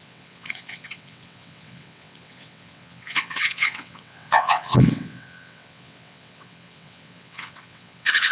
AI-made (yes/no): yes